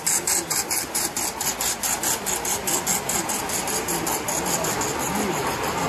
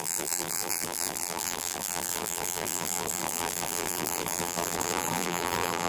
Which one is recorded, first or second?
first